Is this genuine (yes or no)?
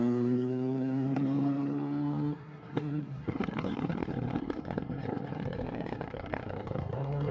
no